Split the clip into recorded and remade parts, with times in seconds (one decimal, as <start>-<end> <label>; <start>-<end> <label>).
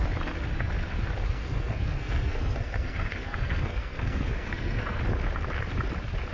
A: 0.0-1.2 recorded; 1.2-5.0 remade; 5.0-6.3 recorded